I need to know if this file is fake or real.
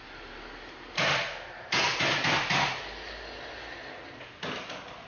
real